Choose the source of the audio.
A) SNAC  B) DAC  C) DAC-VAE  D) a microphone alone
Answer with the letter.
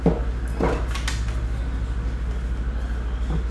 D